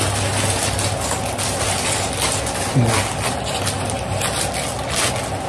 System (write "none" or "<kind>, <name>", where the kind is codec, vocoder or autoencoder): none